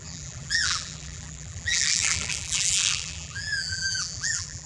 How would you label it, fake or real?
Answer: fake